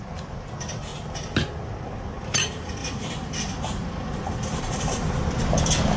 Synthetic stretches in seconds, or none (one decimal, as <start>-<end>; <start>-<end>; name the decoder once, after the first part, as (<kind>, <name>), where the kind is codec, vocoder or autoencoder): 2.8-5.1 (vocoder, BigVGAN v2)

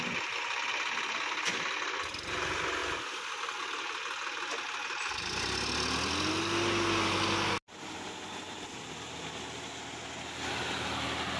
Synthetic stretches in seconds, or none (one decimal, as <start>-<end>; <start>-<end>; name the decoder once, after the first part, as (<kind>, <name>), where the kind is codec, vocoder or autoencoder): none

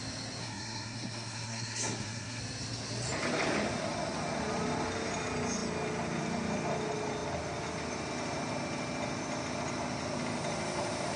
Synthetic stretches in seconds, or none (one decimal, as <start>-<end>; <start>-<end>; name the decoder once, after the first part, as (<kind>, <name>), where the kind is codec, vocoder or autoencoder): 0.4-2.4 (codec, SNAC)

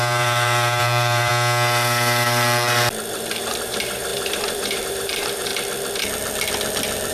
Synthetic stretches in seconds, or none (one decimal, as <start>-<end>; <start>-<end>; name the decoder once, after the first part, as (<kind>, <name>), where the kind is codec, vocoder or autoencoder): 0.0-1.3 (vocoder, BigVGAN v2); 3.1-5.5

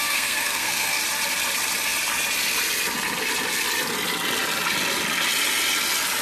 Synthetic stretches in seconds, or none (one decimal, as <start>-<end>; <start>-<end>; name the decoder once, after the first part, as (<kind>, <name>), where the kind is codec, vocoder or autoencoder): 0.0-1.0 (codec, SNAC)

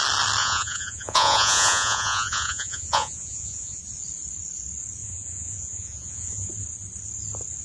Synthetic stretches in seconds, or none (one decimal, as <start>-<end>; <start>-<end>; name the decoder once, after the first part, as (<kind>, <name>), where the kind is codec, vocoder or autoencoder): 0.4-3.8 (vocoder, Vocos); 5.0-6.5

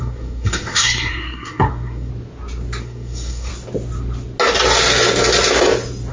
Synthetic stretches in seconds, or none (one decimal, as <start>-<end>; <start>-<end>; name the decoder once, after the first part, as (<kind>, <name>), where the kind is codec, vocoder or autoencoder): 0.0-2.1 (codec, SNAC); 2.8-3.5

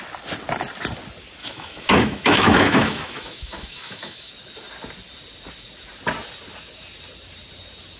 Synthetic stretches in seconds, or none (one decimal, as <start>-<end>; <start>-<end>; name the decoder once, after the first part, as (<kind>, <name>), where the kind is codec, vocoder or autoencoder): 1.4-4.3 (autoencoder, DAC-VAE)